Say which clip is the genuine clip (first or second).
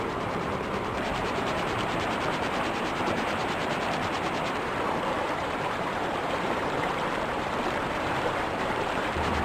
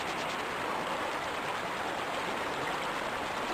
second